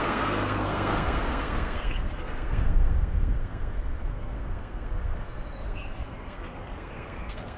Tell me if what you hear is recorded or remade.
remade